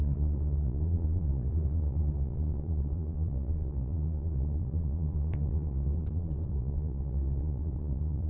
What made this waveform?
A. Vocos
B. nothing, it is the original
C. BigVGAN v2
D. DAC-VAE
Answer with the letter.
A